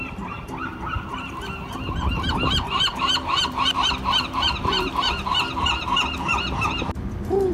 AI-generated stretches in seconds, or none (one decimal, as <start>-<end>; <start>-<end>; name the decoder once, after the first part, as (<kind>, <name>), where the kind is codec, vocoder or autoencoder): 0.7-5.2 (vocoder, BigVGAN v2)